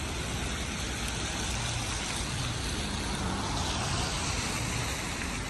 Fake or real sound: real